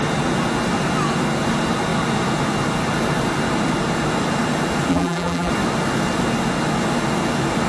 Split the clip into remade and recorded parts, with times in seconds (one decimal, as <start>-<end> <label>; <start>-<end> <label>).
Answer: 0.0-4.9 recorded; 4.9-5.5 remade; 5.5-7.7 recorded